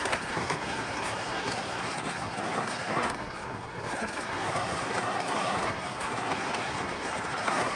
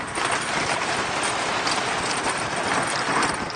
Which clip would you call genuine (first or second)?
second